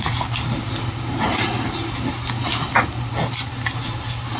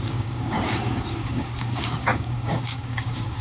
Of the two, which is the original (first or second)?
first